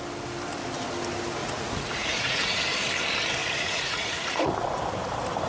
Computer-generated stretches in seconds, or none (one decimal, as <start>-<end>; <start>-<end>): 1.4-2.6; 3.4-4.8